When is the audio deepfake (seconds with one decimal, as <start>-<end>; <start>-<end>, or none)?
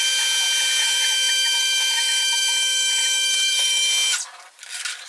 0.8-3.9